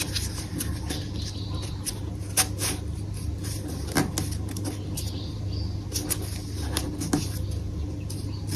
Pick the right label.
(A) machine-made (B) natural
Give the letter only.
B